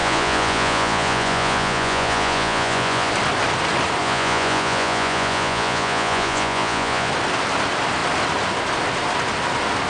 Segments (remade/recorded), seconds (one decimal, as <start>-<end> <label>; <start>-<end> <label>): 0.0-3.1 remade; 3.1-4.0 recorded; 4.0-7.1 remade; 7.1-9.9 recorded